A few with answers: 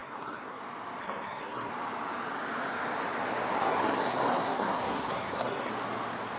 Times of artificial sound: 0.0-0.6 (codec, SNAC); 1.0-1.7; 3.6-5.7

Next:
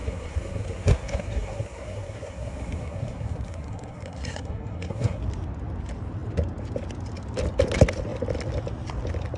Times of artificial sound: 0.0-5.2 (codec, SNAC)

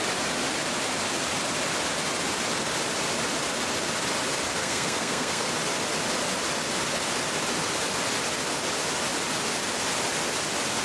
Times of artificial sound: 4.6-5.5 (codec, SNAC)

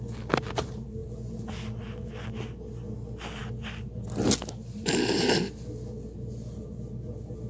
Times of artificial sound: none

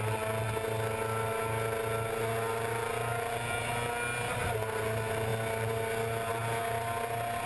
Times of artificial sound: none

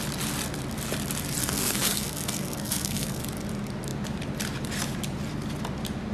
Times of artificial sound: 1.4-3.2 (codec, SNAC)

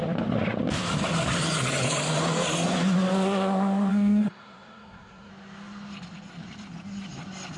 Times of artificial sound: 3.9-5.3 (codec, SNAC)